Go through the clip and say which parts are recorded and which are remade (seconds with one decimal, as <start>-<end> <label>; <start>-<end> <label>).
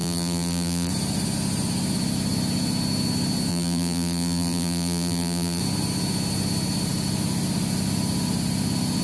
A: 0.0-0.9 remade; 0.9-3.5 recorded; 3.5-5.6 remade; 5.6-9.0 recorded